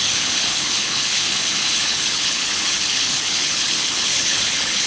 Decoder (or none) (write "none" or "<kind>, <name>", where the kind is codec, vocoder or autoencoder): codec, HILCodec